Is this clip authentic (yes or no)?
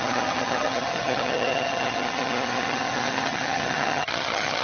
no